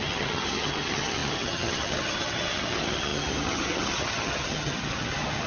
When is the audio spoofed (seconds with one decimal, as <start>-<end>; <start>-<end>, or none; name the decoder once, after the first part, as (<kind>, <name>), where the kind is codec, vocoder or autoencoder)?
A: 0.0-5.5 (vocoder, HiFi-GAN)